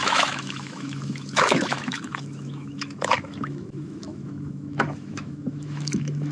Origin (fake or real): fake